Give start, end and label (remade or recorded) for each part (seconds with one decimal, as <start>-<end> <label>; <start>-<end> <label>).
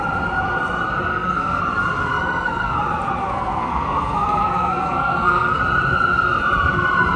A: 0.0-1.1 recorded; 1.1-1.6 remade; 1.6-2.1 recorded; 2.1-2.8 remade; 2.8-3.2 recorded; 3.2-5.6 remade; 5.6-7.2 recorded